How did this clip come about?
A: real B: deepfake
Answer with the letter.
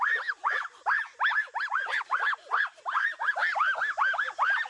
A